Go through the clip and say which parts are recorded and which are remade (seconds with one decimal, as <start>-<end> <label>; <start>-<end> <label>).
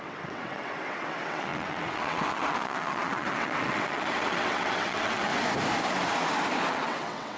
0.0-5.3 remade; 5.3-6.7 recorded; 6.7-7.4 remade